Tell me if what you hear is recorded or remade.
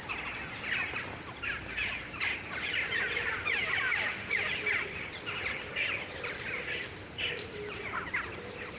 remade